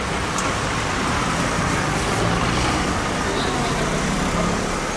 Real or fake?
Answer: real